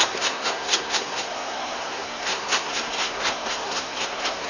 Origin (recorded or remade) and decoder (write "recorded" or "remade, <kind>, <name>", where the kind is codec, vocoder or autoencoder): remade, codec, SNAC